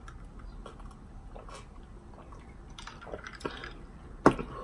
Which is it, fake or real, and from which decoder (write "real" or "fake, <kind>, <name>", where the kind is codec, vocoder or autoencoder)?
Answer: real